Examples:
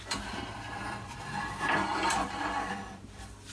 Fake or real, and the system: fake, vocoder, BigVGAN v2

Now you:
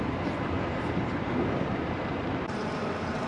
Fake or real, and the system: fake, vocoder, BigVGAN v2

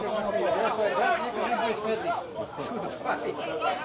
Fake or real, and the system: real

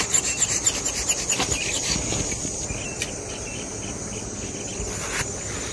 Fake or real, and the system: real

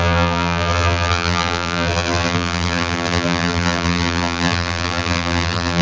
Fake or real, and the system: fake, vocoder, BigVGAN v2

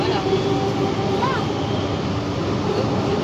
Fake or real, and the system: real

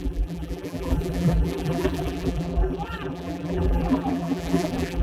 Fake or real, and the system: fake, vocoder, BigVGAN v2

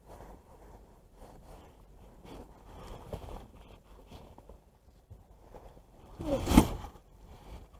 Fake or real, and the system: fake, vocoder, BigVGAN v2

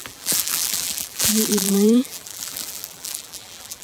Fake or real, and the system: fake, vocoder, BigVGAN v2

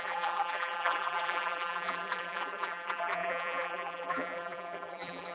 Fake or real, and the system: fake, vocoder, BigVGAN v2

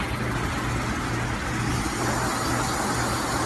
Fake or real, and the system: real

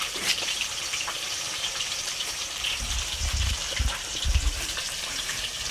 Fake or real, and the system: fake, vocoder, BigVGAN v2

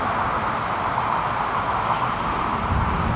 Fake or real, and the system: real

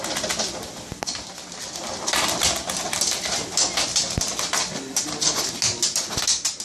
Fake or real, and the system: real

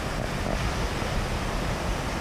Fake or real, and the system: real